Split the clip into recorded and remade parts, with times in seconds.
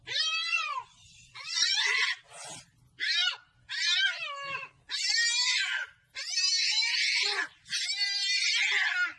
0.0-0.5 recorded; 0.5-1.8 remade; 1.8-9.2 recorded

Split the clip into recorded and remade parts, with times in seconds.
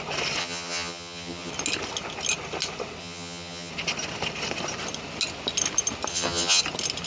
0.0-0.4 recorded; 0.4-1.5 remade; 1.5-3.0 recorded; 3.0-3.7 remade; 3.7-6.1 recorded; 6.1-6.6 remade; 6.6-7.1 recorded